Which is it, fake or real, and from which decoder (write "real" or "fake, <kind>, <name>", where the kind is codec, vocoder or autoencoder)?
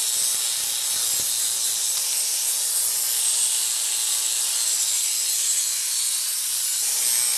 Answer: real